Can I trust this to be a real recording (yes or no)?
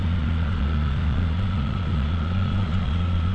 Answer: no